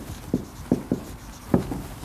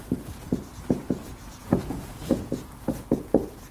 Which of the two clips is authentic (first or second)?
first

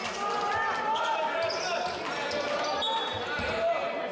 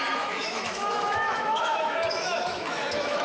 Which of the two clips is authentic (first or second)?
first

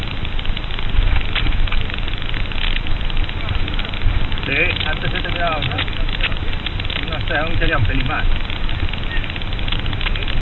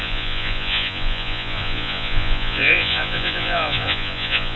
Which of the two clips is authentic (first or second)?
first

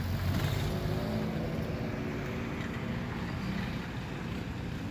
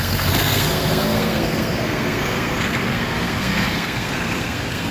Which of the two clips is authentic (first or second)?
first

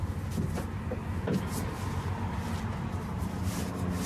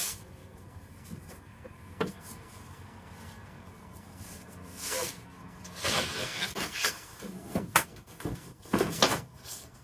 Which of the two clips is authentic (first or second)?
first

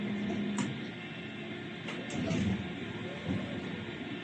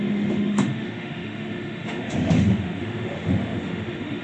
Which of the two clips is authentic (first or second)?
first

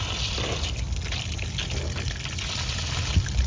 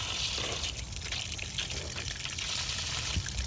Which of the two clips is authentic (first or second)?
first